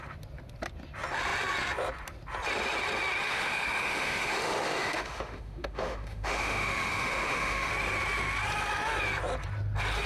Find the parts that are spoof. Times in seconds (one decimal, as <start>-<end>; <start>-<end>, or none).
3.2-7.7